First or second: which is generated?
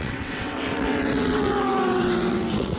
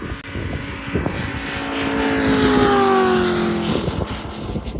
first